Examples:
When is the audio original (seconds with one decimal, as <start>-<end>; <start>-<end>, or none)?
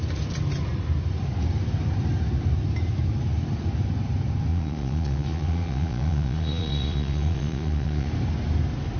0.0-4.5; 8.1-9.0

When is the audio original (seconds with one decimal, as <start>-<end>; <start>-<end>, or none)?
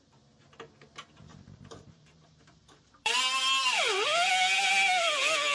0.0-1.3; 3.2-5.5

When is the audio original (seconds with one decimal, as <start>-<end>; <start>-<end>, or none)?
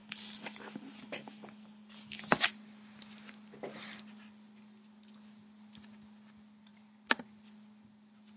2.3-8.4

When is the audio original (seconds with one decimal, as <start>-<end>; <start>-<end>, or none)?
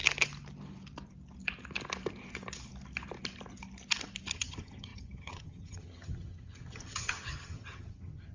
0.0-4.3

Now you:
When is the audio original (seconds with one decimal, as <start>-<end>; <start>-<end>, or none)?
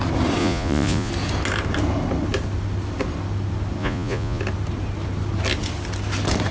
0.0-0.4; 1.1-3.8; 4.4-6.5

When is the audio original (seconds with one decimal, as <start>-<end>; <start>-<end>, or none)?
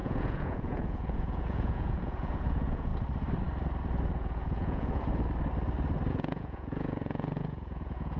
2.9-4.1; 5.1-6.1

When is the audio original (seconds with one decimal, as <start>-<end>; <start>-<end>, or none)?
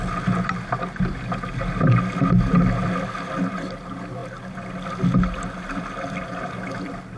0.0-7.2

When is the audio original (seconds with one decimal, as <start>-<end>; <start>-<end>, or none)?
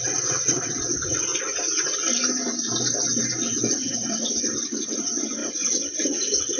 1.3-3.7